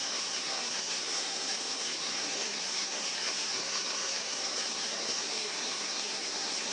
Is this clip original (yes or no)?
no